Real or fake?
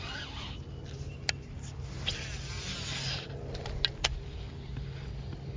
real